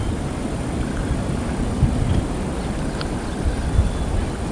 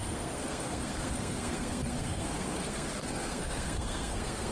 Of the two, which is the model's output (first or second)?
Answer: second